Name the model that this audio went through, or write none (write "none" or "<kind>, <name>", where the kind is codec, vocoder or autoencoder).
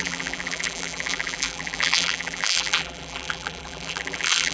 vocoder, BigVGAN v2